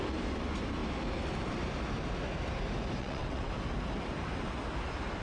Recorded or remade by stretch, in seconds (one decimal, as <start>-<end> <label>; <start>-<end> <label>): 0.0-3.0 recorded; 3.0-3.5 remade; 3.5-5.2 recorded